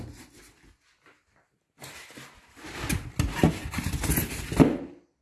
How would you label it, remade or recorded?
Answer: recorded